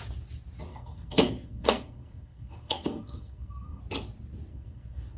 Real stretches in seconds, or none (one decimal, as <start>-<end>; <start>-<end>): 0.0-0.7; 3.8-4.5